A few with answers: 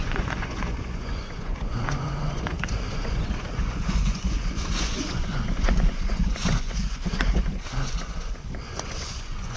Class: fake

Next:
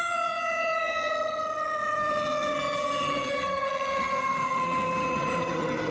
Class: fake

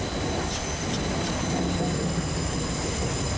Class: real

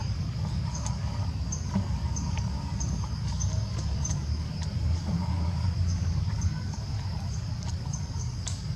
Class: fake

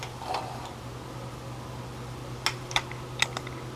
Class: real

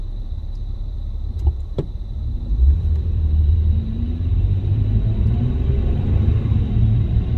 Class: fake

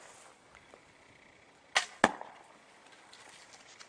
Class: real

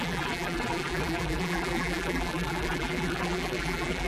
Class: fake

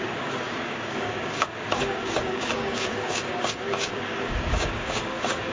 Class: fake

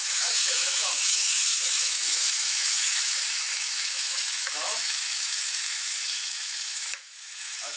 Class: fake